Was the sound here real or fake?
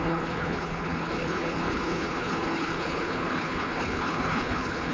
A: fake